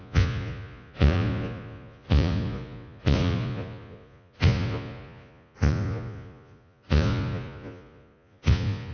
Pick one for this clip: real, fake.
fake